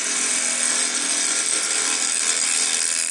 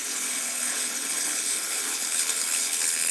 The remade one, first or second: second